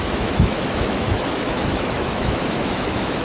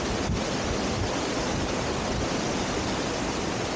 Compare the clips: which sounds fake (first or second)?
first